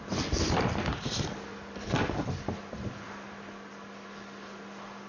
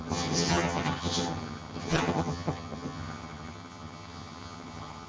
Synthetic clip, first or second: second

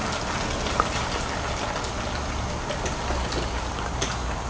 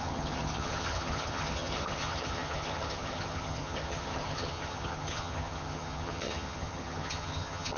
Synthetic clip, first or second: second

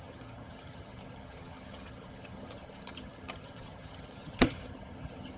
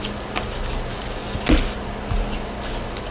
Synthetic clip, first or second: first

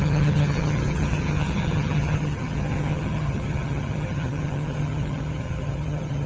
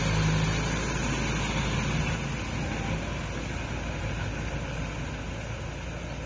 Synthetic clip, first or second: first